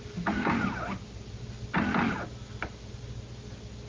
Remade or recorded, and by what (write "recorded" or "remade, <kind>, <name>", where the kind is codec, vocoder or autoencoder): recorded